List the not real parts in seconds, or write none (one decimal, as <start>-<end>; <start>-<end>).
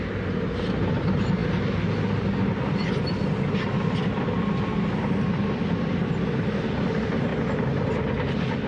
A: none